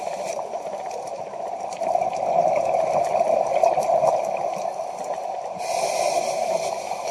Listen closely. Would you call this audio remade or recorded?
recorded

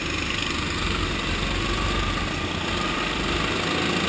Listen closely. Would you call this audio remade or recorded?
recorded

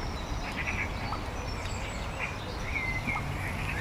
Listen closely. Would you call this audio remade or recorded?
recorded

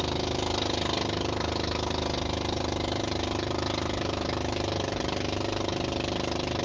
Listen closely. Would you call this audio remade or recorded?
recorded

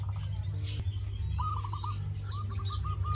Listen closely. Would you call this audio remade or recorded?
recorded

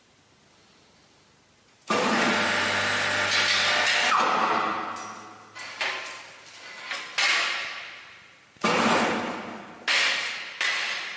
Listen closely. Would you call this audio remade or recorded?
recorded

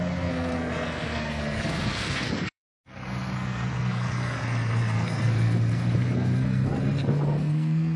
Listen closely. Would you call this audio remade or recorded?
remade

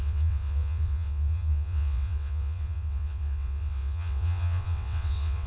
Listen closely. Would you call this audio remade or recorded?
remade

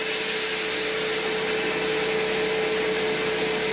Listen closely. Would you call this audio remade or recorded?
recorded